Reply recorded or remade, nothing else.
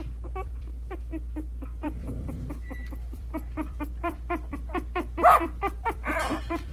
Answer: remade